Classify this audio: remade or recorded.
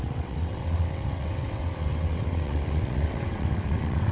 remade